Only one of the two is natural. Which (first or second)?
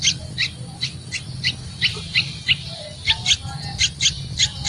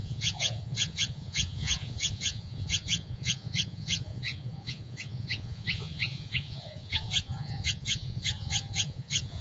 first